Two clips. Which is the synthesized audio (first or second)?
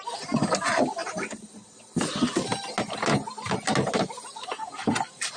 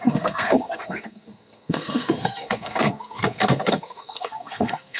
second